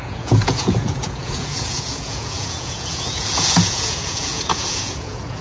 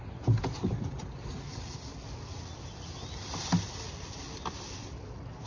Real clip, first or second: second